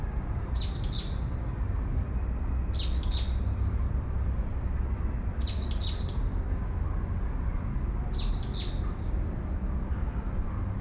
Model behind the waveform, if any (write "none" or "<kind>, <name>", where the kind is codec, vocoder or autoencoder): none